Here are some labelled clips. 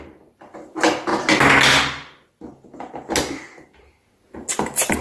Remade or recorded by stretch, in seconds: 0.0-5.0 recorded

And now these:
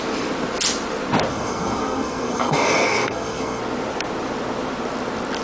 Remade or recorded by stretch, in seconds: 0.0-1.3 recorded; 1.3-3.6 remade; 3.6-5.4 recorded

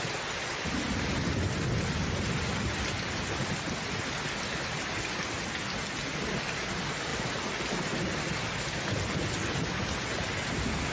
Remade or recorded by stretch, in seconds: 0.0-10.9 recorded

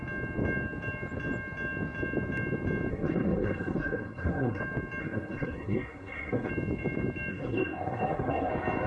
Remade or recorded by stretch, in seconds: 0.0-2.9 recorded; 2.9-4.6 remade; 4.6-5.0 recorded; 5.0-6.5 remade; 6.5-7.3 recorded; 7.3-8.5 remade; 8.5-8.9 recorded

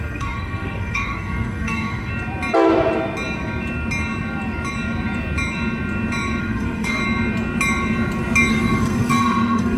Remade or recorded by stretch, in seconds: 0.0-2.1 remade; 2.1-6.4 recorded; 6.4-7.0 remade; 7.0-8.5 recorded; 8.5-9.8 remade

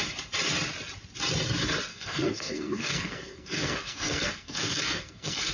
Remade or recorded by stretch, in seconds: 0.0-1.9 recorded; 1.9-5.5 remade

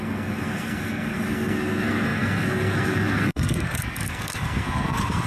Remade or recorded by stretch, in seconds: 0.0-5.3 remade